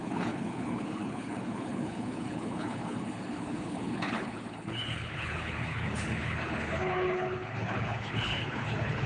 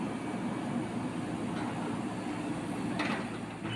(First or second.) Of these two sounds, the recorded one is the second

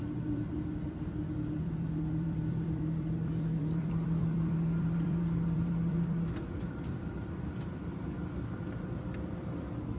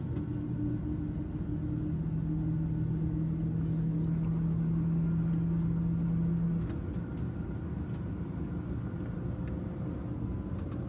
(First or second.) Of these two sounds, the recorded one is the second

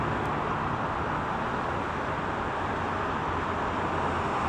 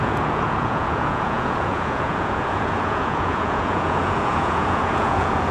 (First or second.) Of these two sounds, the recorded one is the first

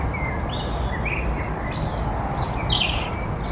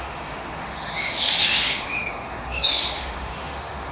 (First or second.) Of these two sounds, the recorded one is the first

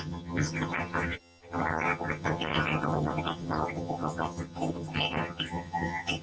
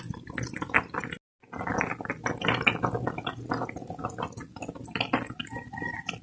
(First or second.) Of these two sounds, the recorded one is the second